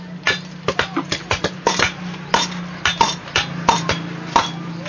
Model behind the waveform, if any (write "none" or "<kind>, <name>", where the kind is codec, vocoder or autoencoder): none